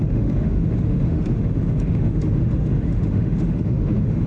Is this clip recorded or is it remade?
remade